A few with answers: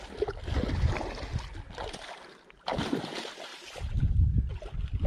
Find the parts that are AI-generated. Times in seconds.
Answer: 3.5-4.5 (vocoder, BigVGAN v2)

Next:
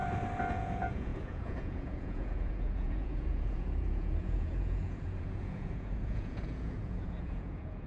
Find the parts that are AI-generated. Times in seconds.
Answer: 0.5-7.9 (vocoder, Vocos)

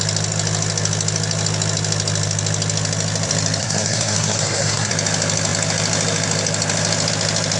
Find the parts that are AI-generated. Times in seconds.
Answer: 3.6-4.9 (codec, SNAC)

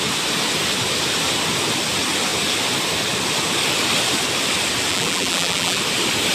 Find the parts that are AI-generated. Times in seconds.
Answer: 4.9-5.8 (vocoder, BigVGAN v2)

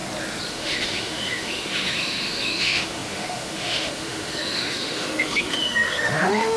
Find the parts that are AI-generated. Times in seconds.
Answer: 0.5-6.6 (autoencoder, DAC-VAE)

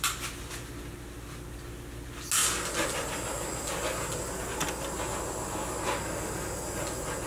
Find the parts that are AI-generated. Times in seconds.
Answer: 2.4-3.7 (vocoder, BigVGAN v2)

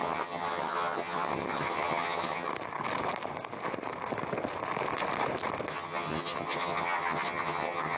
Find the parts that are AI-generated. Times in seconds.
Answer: 0.0-2.5 (vocoder, HiFi-GAN); 5.7-8.0